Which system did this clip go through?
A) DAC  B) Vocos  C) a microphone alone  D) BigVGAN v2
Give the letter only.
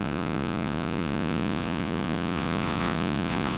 B